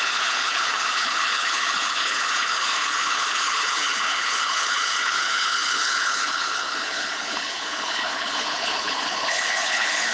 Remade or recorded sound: remade